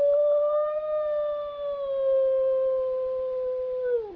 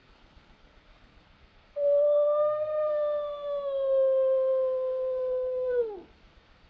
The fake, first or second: second